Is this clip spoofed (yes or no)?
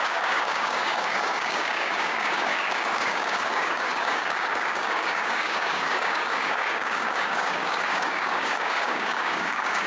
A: yes